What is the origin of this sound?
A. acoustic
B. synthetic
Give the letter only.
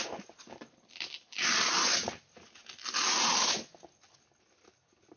A